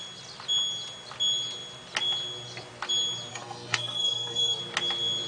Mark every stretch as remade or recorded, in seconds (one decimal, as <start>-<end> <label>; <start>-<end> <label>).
0.0-3.3 recorded; 3.3-4.6 remade; 4.6-5.3 recorded